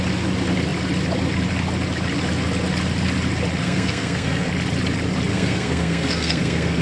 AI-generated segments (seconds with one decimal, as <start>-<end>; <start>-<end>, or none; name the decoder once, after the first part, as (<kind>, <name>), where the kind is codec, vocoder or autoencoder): 3.6-4.5 (codec, SNAC); 5.3-6.8